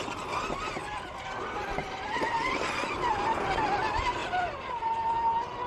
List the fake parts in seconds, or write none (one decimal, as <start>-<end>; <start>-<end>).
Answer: 0.8-1.4; 1.8-2.8; 4.2-4.8

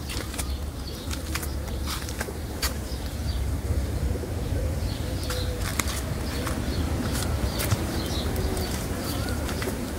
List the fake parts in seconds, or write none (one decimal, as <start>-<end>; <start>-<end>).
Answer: 0.0-5.7; 6.7-10.0

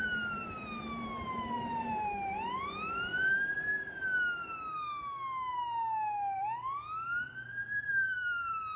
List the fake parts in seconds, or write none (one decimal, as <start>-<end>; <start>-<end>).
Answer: 0.0-3.7; 7.2-8.8

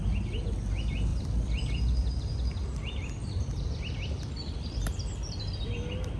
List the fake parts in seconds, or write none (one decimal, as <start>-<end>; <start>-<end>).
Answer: 1.1-2.1; 3.2-5.6

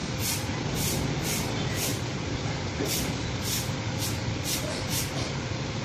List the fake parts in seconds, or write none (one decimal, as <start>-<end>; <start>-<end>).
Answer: none

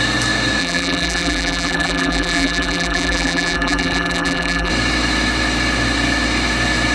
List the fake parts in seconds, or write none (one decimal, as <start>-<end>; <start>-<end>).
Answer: 0.6-4.7

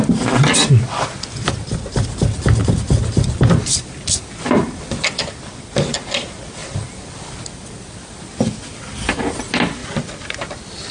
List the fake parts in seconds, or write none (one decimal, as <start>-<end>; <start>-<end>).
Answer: 2.6-5.2; 6.6-8.5

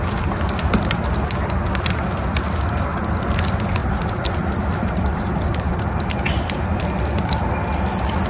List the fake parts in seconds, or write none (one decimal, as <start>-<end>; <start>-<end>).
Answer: 3.8-6.6